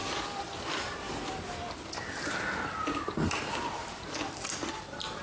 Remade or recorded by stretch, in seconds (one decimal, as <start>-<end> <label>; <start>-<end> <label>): 0.0-5.2 remade